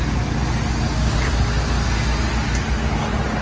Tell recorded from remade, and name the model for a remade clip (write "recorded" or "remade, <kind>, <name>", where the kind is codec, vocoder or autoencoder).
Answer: recorded